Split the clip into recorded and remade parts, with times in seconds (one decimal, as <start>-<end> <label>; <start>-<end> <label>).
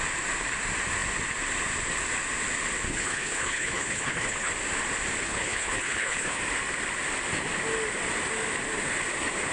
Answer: 0.0-2.9 recorded; 2.9-4.5 remade; 4.5-5.2 recorded; 5.2-6.4 remade; 6.4-9.5 recorded